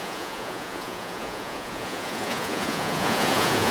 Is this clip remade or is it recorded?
remade